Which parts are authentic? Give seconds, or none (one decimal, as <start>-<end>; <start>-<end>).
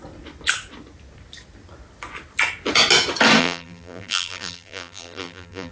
0.0-3.4